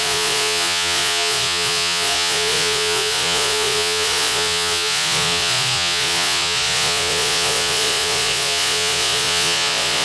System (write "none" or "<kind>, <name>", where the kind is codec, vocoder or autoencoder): vocoder, Vocos